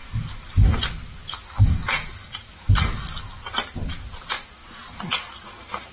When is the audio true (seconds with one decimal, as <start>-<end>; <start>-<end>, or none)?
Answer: 4.6-5.3